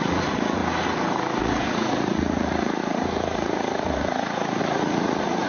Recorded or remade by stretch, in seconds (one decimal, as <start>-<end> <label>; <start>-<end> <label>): 0.0-0.6 remade; 0.6-1.4 recorded; 1.4-5.5 remade

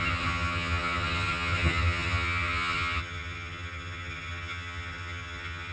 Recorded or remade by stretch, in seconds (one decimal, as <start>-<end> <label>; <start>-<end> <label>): 0.0-5.7 remade